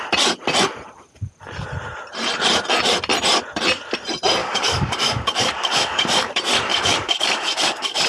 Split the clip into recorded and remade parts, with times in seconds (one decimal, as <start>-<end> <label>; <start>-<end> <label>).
0.0-4.4 recorded; 4.4-6.3 remade; 6.3-6.7 recorded; 6.7-8.1 remade